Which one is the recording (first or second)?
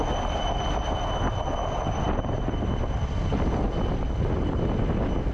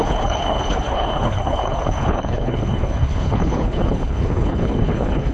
first